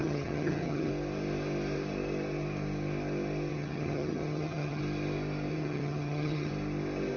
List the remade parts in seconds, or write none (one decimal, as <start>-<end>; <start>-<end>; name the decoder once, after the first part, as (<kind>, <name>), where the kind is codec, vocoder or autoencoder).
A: 0.0-0.9 (vocoder, HiFi-GAN); 3.5-4.8; 5.5-6.5